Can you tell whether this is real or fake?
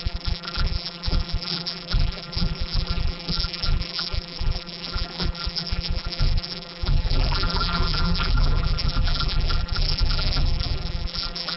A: fake